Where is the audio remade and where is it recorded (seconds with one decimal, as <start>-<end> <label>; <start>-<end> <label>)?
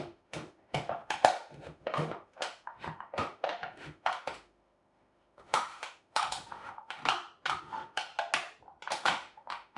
0.0-7.0 remade; 7.0-7.6 recorded; 7.6-8.1 remade; 8.1-8.9 recorded; 8.9-9.8 remade